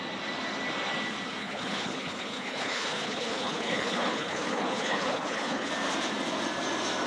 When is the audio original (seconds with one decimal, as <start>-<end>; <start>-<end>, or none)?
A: 0.0-1.4; 5.7-7.1